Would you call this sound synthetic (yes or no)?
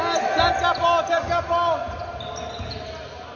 no